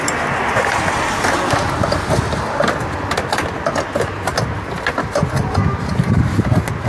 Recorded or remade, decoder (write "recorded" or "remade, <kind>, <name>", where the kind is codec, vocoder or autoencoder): recorded